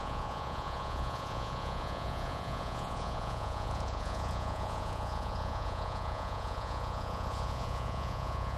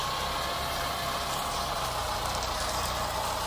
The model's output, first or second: first